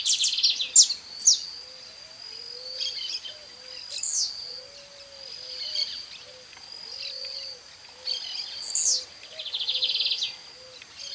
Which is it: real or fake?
real